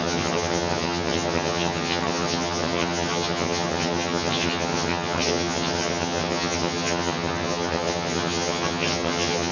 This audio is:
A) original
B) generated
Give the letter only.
B